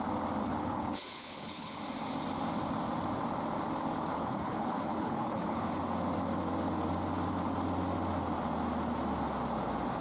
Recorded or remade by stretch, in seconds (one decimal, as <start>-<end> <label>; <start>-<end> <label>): 0.0-0.4 recorded; 0.4-1.8 remade; 1.8-4.1 recorded; 4.1-5.8 remade; 5.8-10.0 recorded